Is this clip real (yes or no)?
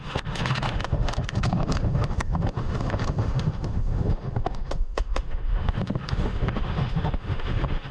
no